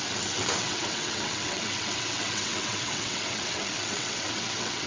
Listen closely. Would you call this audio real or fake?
fake